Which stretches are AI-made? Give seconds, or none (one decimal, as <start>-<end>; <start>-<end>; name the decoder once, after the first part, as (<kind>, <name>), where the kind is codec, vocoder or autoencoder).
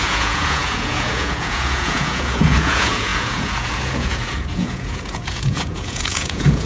0.0-6.7 (vocoder, Vocos)